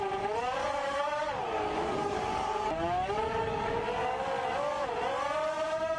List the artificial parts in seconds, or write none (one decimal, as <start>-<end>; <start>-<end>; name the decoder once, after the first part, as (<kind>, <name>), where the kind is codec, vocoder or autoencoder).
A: 0.6-4.2 (codec, DAC)